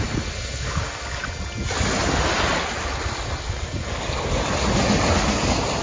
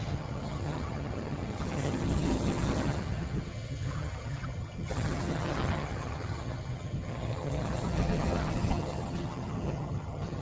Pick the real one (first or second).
first